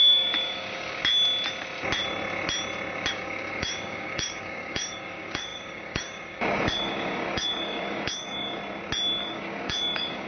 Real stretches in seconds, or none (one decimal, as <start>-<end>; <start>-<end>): 1.0-3.1; 8.6-9.2